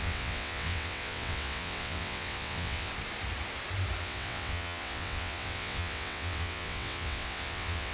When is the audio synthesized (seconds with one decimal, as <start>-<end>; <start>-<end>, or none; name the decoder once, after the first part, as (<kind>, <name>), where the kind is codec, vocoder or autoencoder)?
0.0-2.9 (vocoder, WaveNeXt); 4.0-7.9